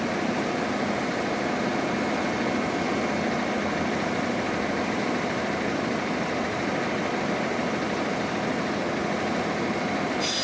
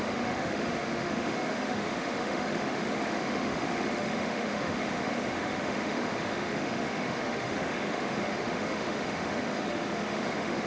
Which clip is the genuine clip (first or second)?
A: first